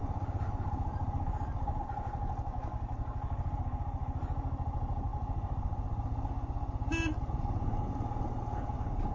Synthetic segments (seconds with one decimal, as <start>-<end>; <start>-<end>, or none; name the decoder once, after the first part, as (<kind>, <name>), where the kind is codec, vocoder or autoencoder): none

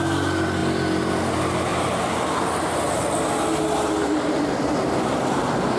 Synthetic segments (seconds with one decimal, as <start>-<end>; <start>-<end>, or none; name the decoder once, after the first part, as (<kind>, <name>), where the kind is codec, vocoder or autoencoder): none

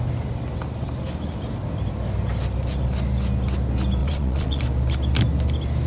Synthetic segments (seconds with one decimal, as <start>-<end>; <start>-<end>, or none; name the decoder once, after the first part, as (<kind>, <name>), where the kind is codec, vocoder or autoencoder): 4.0-4.6 (vocoder, Vocos)

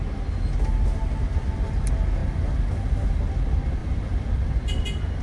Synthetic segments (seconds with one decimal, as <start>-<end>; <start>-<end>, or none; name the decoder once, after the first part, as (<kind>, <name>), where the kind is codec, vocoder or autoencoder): 3.8-4.4 (vocoder, BigVGAN v2)